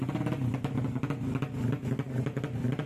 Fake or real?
real